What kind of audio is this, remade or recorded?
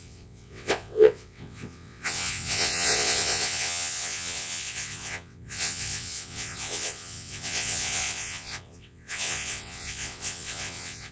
remade